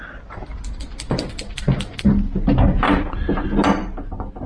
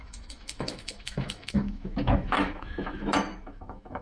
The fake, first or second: second